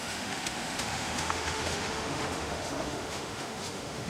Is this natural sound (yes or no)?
no